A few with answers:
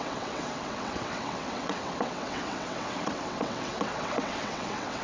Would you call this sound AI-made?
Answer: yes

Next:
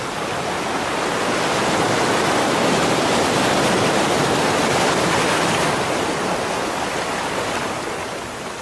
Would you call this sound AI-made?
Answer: no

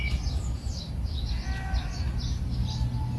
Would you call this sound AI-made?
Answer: no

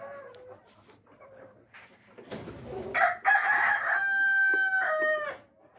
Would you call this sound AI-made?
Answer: no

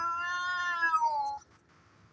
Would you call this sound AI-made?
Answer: no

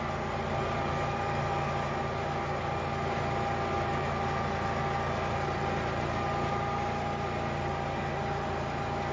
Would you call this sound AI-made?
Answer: no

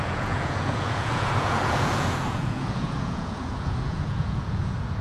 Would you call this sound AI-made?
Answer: yes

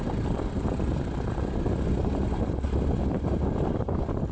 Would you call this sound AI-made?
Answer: no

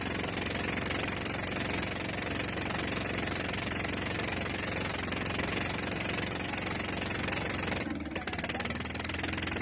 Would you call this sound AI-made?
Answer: no